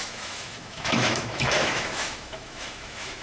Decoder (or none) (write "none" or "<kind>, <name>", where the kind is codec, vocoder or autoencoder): autoencoder, DAC-VAE